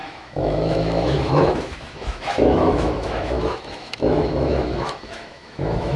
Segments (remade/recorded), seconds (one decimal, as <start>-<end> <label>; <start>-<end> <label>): 0.0-6.0 remade